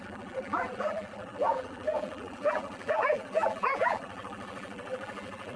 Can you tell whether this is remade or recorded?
remade